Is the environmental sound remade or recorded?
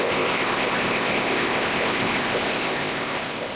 remade